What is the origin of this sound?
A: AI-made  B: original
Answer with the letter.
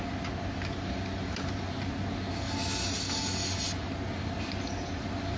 B